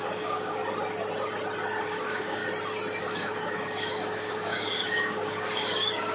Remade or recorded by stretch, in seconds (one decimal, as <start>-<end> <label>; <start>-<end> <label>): 0.0-0.6 remade; 0.6-1.8 recorded; 1.8-2.4 remade; 2.4-3.0 recorded; 3.0-6.1 remade